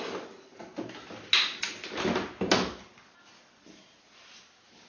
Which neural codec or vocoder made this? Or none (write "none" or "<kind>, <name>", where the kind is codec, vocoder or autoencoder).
none